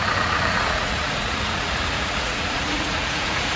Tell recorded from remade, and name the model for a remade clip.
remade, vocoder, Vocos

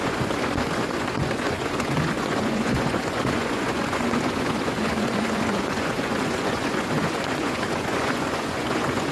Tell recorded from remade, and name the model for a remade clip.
remade, vocoder, Vocos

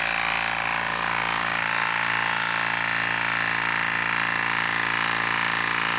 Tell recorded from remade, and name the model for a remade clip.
recorded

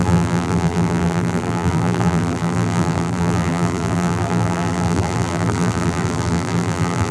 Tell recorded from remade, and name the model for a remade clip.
remade, vocoder, BigVGAN v2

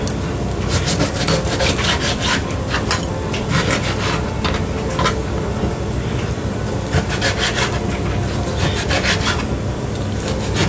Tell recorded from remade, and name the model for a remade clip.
recorded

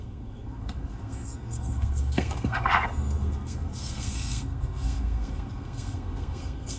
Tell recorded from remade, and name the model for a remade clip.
remade, codec, SNAC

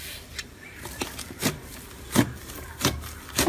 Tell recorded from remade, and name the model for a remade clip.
remade, vocoder, BigVGAN v2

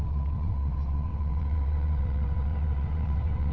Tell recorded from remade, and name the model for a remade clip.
remade, vocoder, WaveNeXt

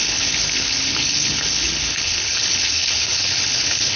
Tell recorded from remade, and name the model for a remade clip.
remade, codec, HILCodec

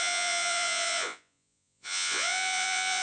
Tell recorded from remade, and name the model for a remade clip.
remade, vocoder, Vocos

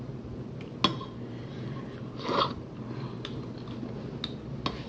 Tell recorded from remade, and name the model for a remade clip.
recorded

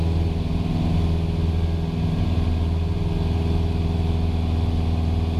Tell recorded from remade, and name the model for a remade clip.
recorded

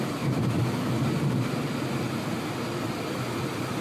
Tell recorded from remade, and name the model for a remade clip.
recorded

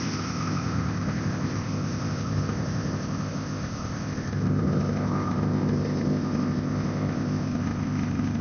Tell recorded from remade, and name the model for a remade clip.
remade, codec, ZipCodec